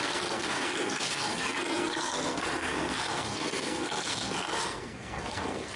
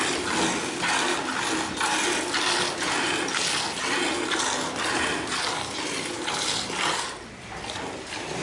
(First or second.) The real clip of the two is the second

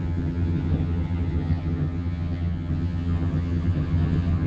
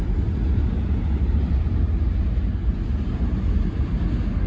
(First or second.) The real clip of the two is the second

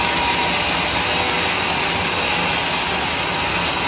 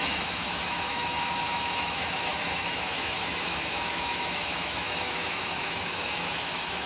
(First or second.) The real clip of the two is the first